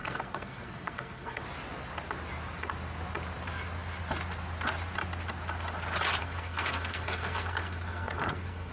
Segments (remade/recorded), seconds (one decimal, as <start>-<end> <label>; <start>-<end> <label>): 0.0-1.4 remade; 1.4-6.2 recorded; 6.2-8.7 remade